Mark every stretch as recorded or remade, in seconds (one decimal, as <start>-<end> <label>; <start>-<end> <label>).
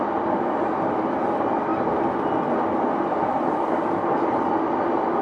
0.0-5.2 recorded